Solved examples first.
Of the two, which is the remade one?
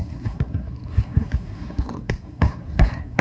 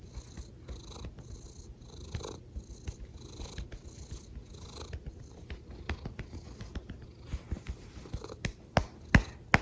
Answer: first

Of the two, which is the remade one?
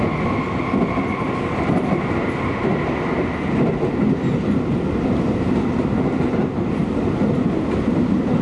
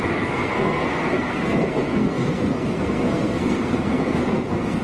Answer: second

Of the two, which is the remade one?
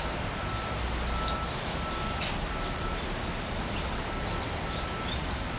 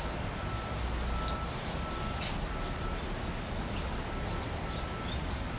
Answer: first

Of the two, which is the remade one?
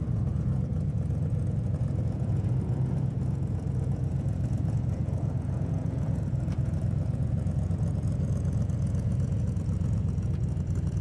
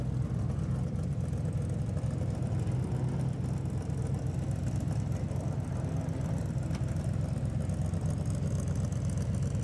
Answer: first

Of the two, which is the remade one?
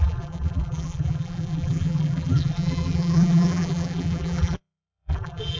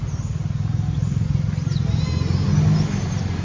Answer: first